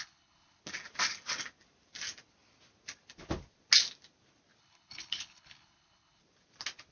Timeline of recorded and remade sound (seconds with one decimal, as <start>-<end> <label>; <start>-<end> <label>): 0.0-0.6 remade; 0.6-4.6 recorded; 4.6-6.2 remade; 6.2-6.9 recorded